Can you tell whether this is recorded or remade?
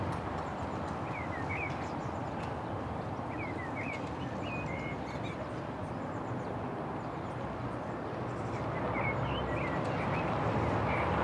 recorded